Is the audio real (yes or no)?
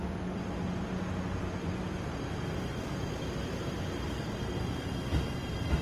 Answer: yes